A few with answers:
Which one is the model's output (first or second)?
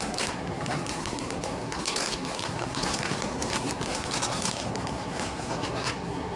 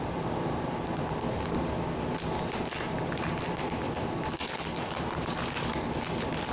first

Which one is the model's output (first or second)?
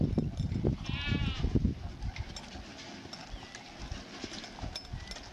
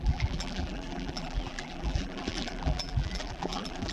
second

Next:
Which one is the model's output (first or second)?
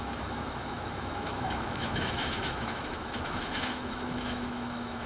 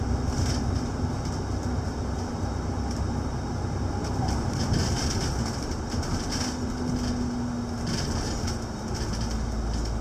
first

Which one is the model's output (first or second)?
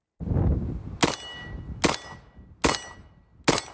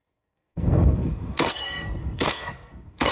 second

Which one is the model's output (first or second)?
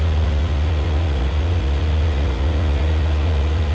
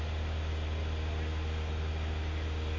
first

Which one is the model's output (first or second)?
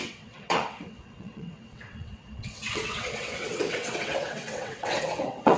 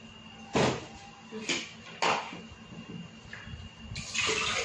first